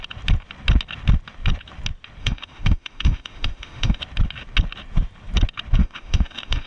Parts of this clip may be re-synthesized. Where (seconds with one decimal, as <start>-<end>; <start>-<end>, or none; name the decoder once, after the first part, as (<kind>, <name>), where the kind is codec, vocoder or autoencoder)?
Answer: 2.2-4.0 (autoencoder, DAC-VAE); 5.8-6.7